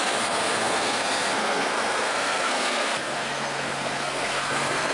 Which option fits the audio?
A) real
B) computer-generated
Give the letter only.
B